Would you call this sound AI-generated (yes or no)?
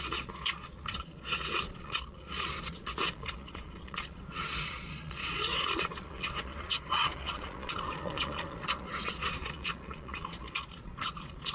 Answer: yes